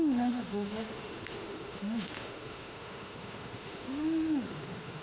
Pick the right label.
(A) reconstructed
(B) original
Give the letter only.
A